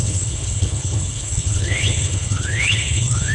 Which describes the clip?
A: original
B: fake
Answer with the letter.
B